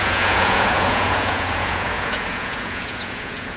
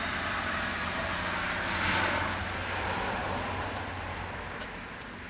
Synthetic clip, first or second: first